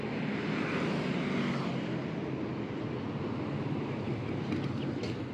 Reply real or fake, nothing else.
real